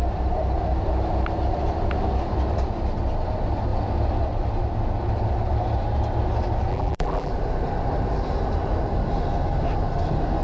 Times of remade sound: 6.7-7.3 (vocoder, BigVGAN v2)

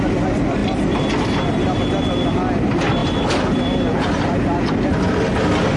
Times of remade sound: 3.0-4.7 (vocoder, BigVGAN v2)

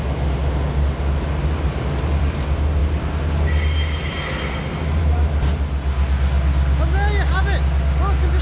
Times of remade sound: none

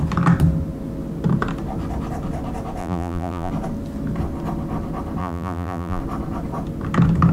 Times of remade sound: 2.8-3.5 (vocoder, BigVGAN v2); 5.2-6.0